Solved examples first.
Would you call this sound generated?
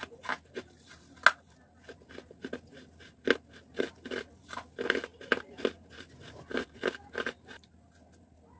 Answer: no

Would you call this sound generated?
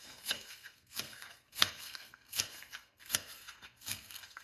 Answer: yes